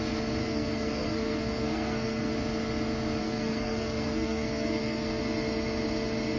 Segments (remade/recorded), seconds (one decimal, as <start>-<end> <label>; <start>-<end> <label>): 0.0-0.4 recorded; 0.4-2.3 remade; 2.3-3.2 recorded; 3.2-5.2 remade; 5.2-6.4 recorded